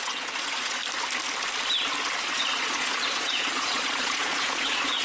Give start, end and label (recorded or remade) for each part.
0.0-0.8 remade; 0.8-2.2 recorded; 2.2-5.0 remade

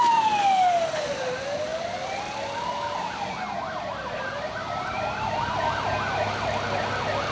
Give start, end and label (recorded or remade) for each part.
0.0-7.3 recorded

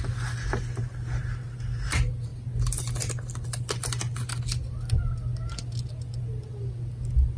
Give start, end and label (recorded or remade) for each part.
0.0-7.4 recorded

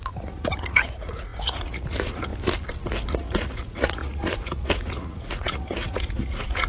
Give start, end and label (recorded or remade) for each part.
0.0-2.3 remade; 2.3-3.1 recorded; 3.1-6.7 remade

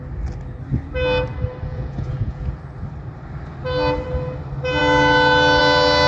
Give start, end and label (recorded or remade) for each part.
0.0-1.7 recorded; 1.7-2.6 remade; 2.6-6.1 recorded